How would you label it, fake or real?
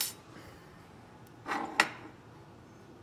real